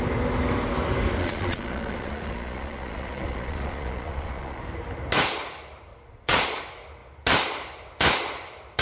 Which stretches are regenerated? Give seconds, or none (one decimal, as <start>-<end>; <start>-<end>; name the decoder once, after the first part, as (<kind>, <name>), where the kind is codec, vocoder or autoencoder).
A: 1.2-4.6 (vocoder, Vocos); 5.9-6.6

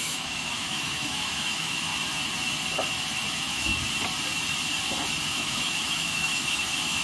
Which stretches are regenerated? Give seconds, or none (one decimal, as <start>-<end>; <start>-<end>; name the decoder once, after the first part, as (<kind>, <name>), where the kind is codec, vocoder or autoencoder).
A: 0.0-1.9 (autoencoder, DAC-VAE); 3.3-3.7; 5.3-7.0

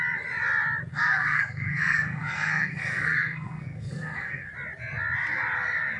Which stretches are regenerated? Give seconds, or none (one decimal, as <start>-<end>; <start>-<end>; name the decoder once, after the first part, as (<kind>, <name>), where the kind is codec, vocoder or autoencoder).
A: 0.9-4.5 (codec, SNAC)